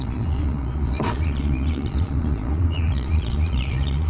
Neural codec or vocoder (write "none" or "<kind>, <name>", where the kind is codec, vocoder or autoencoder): vocoder, Vocos